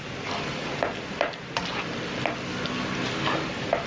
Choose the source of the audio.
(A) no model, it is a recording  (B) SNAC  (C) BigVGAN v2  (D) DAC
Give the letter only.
A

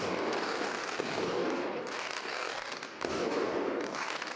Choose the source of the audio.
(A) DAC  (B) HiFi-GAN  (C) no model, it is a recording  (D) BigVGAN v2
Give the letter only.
A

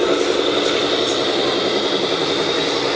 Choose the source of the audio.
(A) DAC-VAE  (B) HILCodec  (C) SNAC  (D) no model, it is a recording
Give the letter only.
D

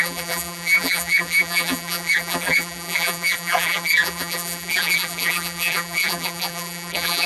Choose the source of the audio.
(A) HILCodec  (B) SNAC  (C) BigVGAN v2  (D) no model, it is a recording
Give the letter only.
C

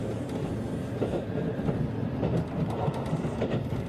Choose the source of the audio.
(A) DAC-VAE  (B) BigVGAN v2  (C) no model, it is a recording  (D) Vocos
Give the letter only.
C